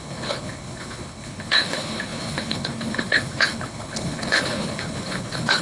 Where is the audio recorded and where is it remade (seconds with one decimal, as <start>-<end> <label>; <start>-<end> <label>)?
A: 0.0-5.6 remade